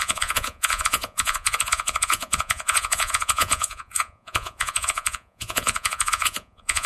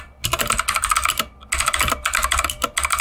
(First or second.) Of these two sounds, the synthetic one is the first